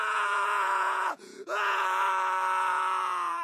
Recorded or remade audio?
remade